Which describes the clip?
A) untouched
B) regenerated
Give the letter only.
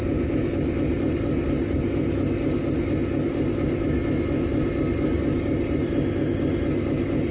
A